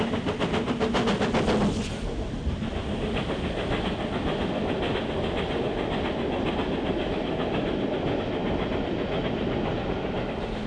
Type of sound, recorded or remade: recorded